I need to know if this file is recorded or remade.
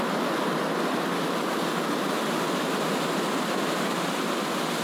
recorded